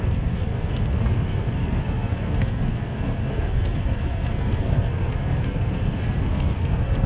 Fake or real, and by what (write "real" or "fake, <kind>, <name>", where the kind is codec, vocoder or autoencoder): fake, codec, SNAC